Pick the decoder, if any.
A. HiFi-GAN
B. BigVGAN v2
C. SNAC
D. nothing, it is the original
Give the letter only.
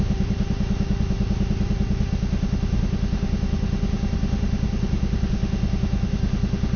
B